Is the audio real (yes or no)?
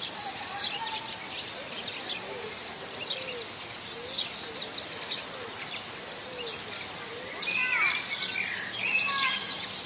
yes